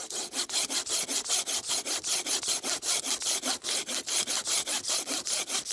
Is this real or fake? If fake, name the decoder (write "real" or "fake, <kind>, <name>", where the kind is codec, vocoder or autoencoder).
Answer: real